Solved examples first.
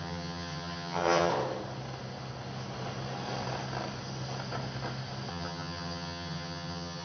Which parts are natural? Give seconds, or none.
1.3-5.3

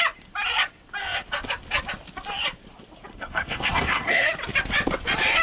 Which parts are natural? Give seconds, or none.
0.0-3.1; 4.3-5.4

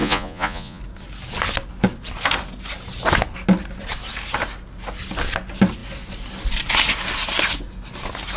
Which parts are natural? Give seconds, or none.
0.8-8.4